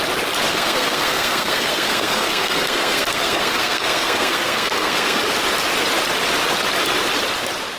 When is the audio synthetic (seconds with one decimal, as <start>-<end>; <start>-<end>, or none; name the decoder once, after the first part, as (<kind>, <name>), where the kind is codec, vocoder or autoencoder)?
0.5-5.2 (codec, SNAC)